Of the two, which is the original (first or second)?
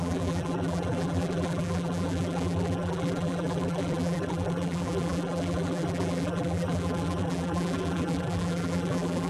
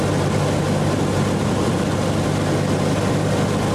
second